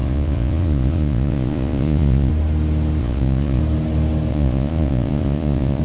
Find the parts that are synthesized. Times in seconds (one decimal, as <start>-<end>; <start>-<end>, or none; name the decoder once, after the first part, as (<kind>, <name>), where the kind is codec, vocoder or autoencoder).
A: 0.0-2.3 (vocoder, Vocos); 3.0-3.6; 4.3-5.8